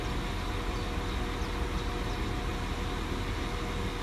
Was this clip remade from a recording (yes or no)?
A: no